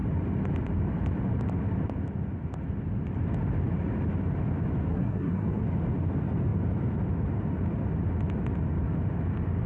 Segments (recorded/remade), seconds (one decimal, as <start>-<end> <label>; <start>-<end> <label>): 0.0-4.9 recorded; 4.9-5.6 remade; 5.6-9.7 recorded